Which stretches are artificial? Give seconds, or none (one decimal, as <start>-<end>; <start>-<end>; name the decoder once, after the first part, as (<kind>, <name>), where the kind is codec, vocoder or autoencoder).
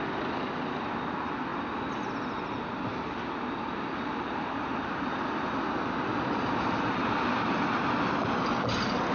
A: 2.9-5.3 (vocoder, BigVGAN v2); 6.1-7.6